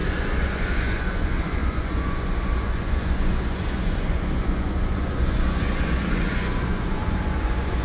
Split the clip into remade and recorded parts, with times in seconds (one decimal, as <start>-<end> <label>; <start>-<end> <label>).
0.0-7.8 remade